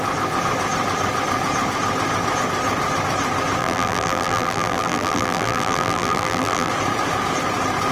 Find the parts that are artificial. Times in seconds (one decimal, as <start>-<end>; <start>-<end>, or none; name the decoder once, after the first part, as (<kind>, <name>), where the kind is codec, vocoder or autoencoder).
3.6-6.7 (vocoder, BigVGAN v2)